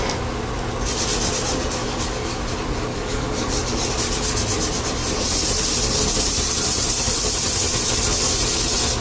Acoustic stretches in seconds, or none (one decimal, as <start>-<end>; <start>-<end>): 0.0-1.8; 2.4-2.9; 3.9-9.0